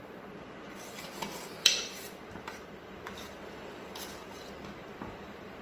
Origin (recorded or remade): remade